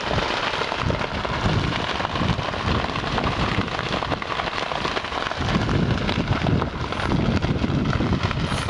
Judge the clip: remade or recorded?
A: recorded